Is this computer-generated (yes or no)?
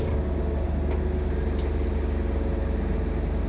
no